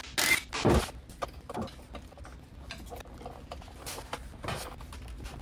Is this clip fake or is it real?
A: real